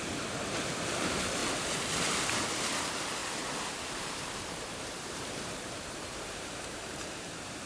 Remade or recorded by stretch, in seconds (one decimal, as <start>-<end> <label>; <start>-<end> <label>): 0.0-1.4 remade; 1.4-2.7 recorded; 2.7-7.7 remade